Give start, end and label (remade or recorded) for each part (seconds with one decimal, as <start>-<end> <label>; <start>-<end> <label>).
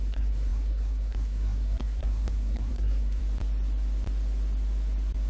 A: 0.0-3.2 remade; 3.2-5.3 recorded